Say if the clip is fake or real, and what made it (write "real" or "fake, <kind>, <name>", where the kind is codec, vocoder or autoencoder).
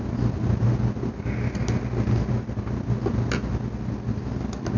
real